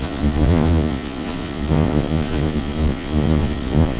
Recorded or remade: remade